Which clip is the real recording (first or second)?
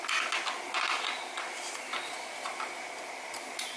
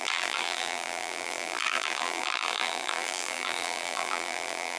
first